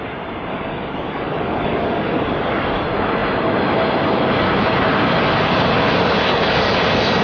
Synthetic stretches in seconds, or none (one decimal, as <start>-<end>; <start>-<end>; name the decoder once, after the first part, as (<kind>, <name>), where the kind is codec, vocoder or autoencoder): 0.5-2.8 (codec, DAC); 6.3-6.8